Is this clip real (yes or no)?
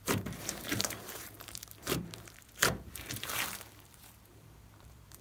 no